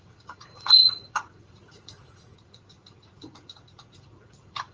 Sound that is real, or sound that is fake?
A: fake